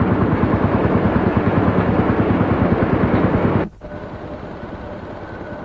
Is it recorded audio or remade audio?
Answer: recorded